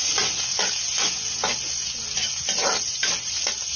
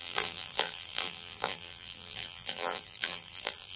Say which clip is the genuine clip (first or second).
first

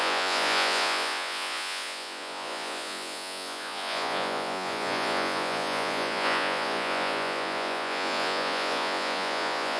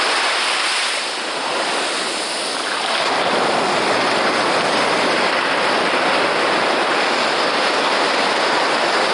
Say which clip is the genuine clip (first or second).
second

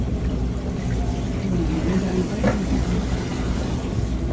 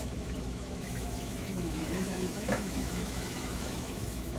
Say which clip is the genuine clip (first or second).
first